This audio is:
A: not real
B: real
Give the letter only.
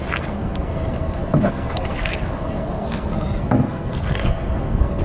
A